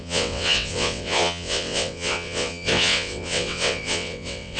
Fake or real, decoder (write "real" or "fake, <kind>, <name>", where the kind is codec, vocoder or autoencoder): fake, vocoder, WaveNeXt